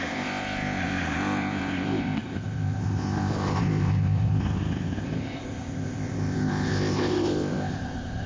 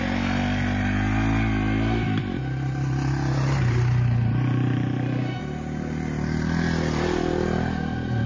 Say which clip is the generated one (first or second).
first